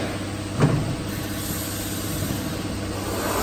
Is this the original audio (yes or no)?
yes